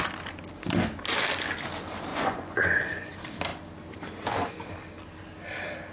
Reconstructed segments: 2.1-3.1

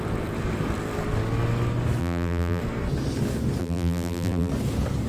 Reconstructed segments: 2.0-2.6; 3.6-4.5

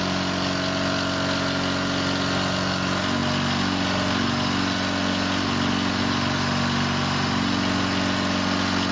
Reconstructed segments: none

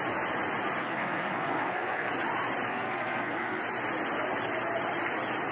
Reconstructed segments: 0.8-2.1; 2.7-3.6

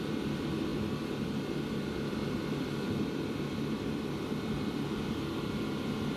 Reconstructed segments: 2.2-3.2

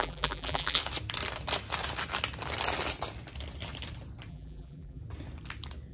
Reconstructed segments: 0.0-0.8; 4.3-5.0

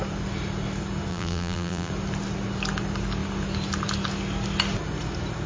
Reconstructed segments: 1.1-1.9